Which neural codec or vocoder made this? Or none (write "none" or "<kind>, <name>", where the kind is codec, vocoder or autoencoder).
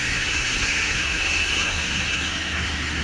codec, SNAC